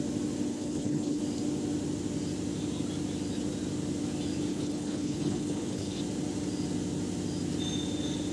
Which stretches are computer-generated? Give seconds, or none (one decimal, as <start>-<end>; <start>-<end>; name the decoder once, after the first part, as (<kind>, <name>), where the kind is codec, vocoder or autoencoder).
0.5-1.2 (codec, HILCodec); 4.5-6.0